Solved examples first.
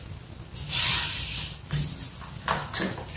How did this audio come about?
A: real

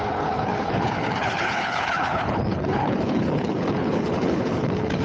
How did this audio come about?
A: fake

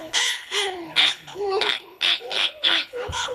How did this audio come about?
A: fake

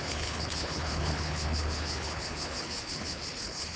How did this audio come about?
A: fake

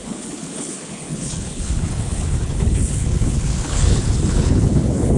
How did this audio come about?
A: fake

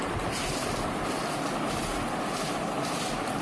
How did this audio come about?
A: real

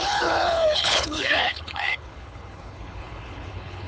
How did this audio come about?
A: fake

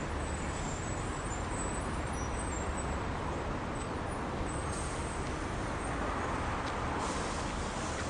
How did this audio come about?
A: real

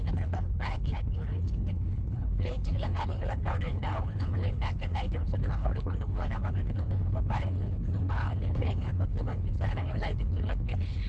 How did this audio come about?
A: fake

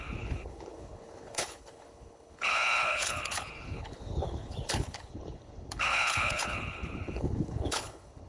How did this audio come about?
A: fake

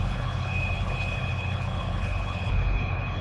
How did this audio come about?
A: fake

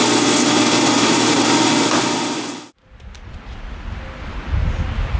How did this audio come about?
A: real